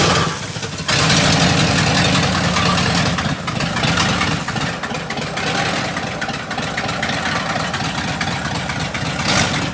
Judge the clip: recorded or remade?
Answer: recorded